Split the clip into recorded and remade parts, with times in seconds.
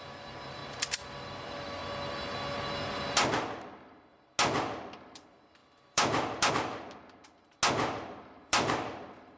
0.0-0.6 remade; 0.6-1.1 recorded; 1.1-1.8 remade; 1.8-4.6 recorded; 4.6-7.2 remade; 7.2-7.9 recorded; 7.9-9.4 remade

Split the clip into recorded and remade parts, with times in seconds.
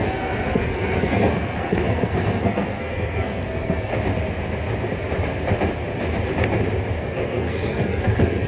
0.0-3.9 remade; 3.9-7.0 recorded; 7.0-8.5 remade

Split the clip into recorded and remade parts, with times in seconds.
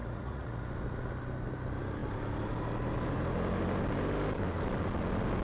0.0-0.6 remade; 0.6-5.4 recorded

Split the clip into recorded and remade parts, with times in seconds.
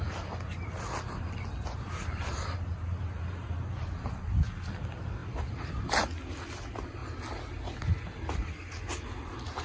0.0-9.6 recorded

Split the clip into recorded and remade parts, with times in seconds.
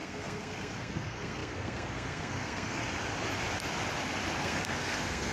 0.0-2.8 remade; 2.8-4.4 recorded; 4.4-5.3 remade